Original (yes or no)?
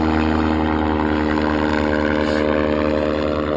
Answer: yes